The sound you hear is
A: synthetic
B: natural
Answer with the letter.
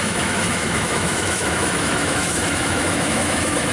A